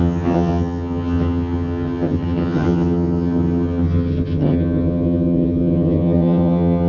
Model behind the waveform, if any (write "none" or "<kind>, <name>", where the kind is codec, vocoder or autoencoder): vocoder, HiFi-GAN